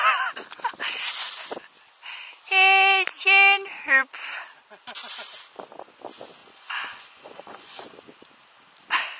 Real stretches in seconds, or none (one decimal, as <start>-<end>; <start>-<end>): 0.0-6.4; 7.8-9.2